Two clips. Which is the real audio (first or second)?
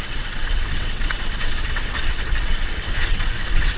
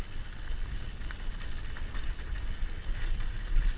second